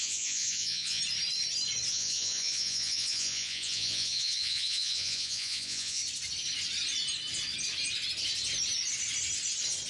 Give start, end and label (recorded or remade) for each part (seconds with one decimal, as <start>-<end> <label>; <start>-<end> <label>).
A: 0.0-1.0 remade; 1.0-1.9 recorded; 1.9-6.0 remade; 6.0-9.9 recorded